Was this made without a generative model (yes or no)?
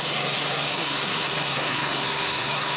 no